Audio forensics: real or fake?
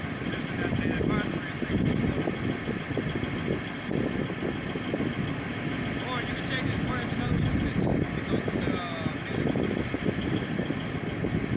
real